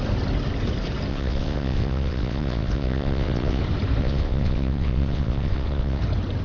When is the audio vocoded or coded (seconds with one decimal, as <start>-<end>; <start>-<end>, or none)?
1.1-3.6; 4.0-6.0